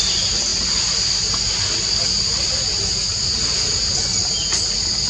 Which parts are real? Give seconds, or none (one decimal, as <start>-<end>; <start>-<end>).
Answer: 0.0-5.1